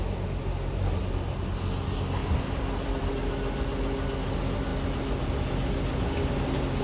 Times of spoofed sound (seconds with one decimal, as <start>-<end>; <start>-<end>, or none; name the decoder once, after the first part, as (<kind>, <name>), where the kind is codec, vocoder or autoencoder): 2.2-3.1 (vocoder, BigVGAN v2)